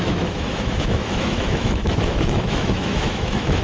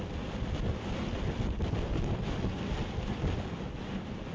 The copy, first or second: first